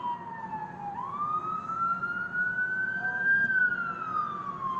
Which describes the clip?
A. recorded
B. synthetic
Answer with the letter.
A